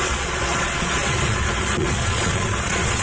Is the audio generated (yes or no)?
yes